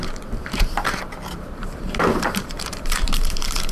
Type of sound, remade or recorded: remade